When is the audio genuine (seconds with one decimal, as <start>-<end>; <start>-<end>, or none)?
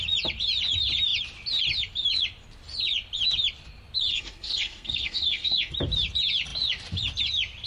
0.0-4.1; 5.7-7.7